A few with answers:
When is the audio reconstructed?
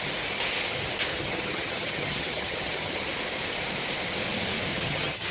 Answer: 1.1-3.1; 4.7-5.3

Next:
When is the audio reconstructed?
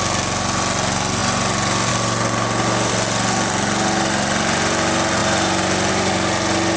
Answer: none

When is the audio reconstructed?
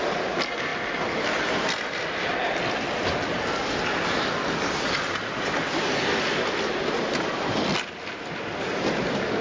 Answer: none